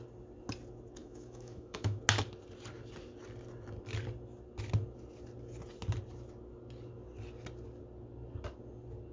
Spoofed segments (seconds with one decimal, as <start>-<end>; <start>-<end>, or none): 1.0-2.0